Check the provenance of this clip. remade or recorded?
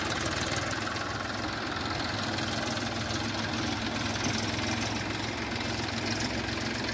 recorded